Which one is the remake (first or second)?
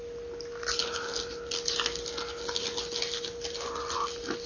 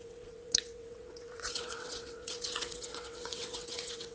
second